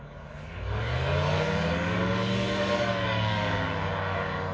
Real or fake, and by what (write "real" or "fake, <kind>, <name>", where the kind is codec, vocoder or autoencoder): fake, codec, DAC